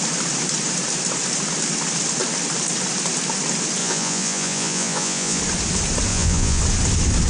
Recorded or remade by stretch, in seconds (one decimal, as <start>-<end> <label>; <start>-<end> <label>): 0.0-3.8 recorded; 3.8-5.4 remade; 5.4-6.1 recorded; 6.1-6.6 remade; 6.6-7.3 recorded